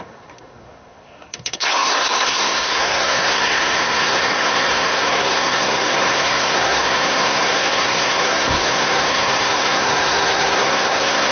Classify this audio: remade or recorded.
remade